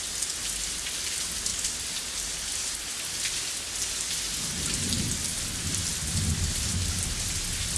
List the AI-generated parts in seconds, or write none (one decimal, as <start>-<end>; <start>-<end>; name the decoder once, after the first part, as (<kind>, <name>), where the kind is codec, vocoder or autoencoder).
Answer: none